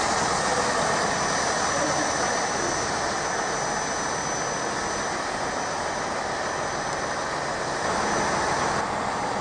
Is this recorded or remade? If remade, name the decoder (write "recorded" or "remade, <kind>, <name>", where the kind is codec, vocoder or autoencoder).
recorded